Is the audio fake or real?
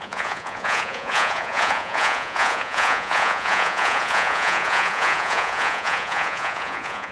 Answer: fake